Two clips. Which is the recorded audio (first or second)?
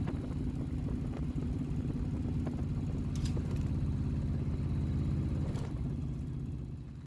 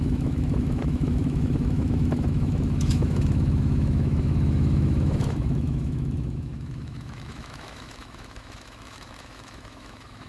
first